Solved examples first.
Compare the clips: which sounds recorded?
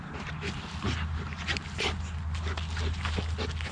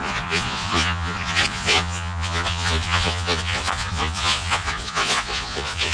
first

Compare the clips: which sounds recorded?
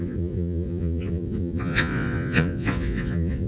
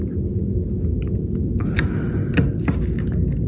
second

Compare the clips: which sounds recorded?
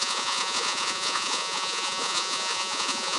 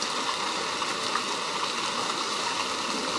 second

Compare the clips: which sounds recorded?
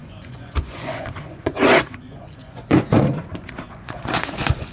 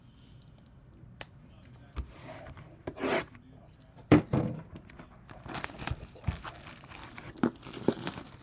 second